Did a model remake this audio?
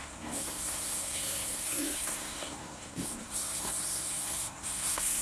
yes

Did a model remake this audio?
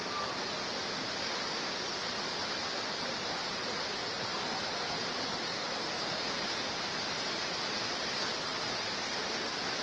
no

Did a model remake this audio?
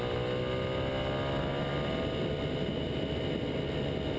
no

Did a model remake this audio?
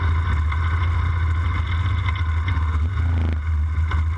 no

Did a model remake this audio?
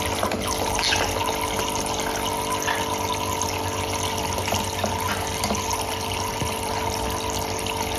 no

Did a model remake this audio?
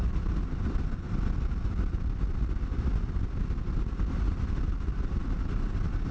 no